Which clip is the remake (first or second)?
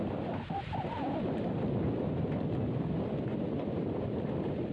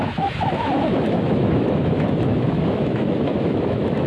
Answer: second